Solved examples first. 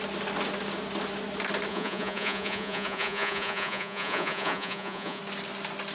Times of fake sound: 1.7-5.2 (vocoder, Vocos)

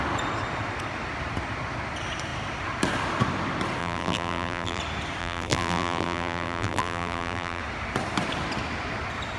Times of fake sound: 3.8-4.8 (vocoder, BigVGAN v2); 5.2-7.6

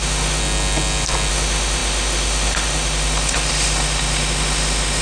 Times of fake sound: 0.0-0.4 (autoencoder, DAC-VAE); 1.3-5.0